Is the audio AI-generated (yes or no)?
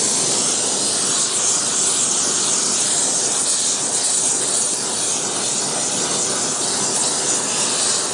no